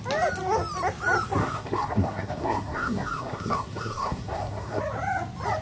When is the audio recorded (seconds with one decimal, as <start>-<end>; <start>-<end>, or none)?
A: 0.0-1.4; 4.8-5.6